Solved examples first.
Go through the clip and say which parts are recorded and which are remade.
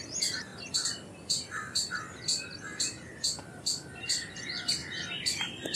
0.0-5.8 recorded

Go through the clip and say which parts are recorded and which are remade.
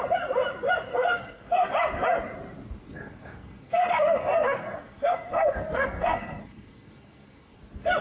0.0-0.9 recorded; 0.9-1.7 remade; 1.7-2.8 recorded; 2.8-7.6 remade; 7.6-8.0 recorded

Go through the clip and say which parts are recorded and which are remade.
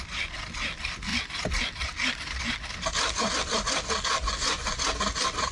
0.0-4.2 recorded; 4.2-4.8 remade; 4.8-5.5 recorded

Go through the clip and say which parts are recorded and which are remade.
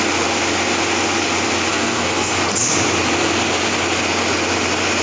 0.0-1.7 recorded; 1.7-2.3 remade; 2.3-5.0 recorded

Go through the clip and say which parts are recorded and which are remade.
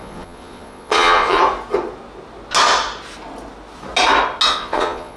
0.0-1.4 remade; 1.4-4.5 recorded; 4.5-5.2 remade